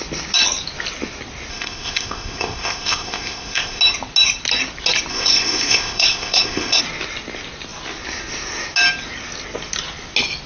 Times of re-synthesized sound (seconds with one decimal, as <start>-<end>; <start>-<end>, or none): 1.5-3.8; 5.1-6.8